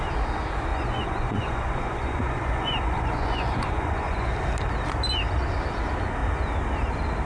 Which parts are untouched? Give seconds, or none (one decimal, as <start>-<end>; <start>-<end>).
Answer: 0.0-0.7; 4.3-7.3